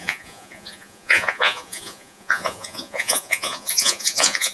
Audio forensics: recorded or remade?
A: remade